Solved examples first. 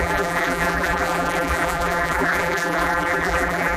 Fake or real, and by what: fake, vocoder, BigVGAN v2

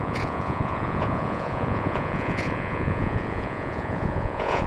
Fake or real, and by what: fake, vocoder, Vocos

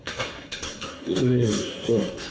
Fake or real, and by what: fake, codec, SNAC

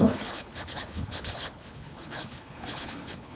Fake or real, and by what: fake, codec, HILCodec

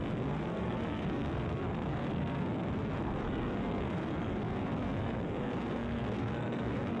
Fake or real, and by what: fake, codec, SNAC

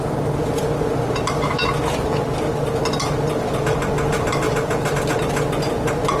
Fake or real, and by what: real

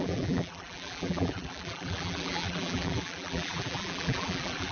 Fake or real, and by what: fake, vocoder, BigVGAN v2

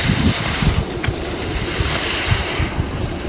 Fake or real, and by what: fake, vocoder, BigVGAN v2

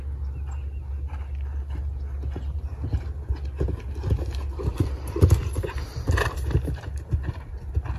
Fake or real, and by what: real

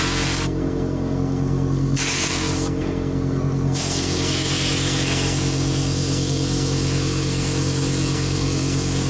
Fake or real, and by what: fake, codec, SNAC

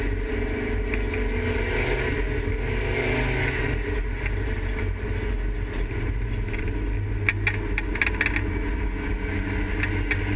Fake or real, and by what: real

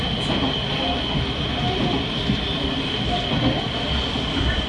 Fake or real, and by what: real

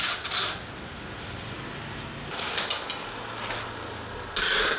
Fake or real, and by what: real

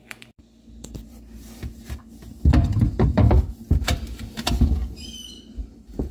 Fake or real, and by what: fake, vocoder, BigVGAN v2